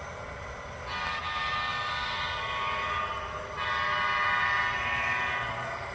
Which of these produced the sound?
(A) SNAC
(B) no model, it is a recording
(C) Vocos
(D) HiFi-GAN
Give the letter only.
B